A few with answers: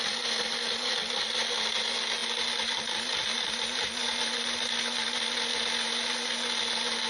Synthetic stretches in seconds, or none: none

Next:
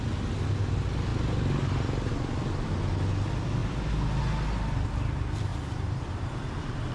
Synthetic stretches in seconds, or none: 5.5-6.0

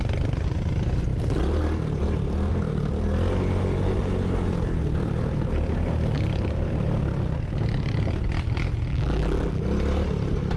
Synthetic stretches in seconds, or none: 8.9-9.6

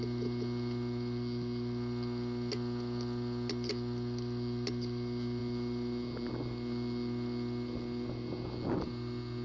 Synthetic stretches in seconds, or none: none